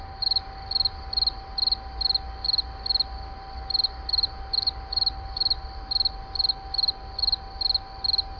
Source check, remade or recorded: recorded